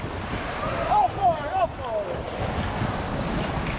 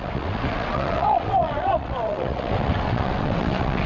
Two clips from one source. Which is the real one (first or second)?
first